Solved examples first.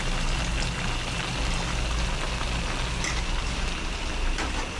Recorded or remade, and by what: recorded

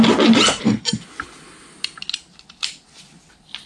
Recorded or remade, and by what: recorded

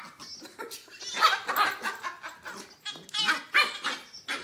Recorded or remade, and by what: recorded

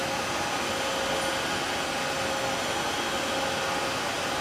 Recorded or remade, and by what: recorded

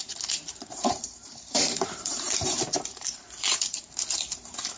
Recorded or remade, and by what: remade, vocoder, BigVGAN v2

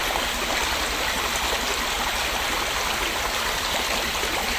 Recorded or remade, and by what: recorded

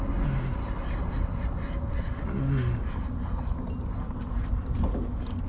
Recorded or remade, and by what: recorded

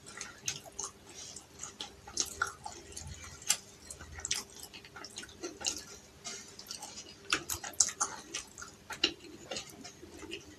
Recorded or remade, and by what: recorded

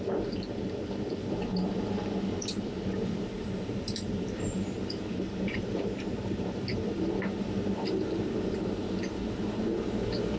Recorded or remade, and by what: remade, vocoder, BigVGAN v2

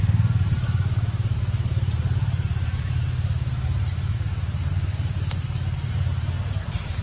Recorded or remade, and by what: remade, vocoder, BigVGAN v2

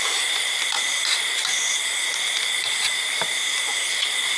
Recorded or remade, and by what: remade, vocoder, BigVGAN v2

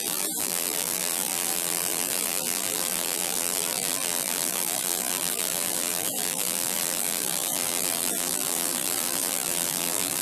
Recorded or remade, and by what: remade, vocoder, BigVGAN v2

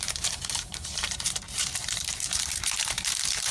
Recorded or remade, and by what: remade, vocoder, BigVGAN v2